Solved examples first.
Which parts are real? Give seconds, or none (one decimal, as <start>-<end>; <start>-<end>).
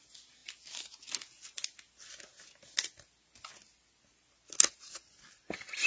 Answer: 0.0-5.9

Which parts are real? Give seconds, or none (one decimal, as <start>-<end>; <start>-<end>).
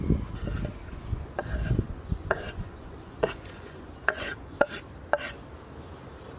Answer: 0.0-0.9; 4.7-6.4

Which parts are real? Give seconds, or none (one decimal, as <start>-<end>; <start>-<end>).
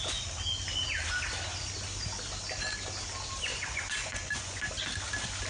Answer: 0.0-3.5; 4.6-5.5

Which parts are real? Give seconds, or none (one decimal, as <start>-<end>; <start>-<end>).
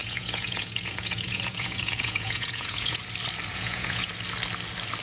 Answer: 3.0-3.5; 4.1-5.0